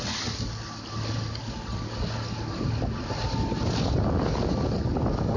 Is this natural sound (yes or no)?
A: yes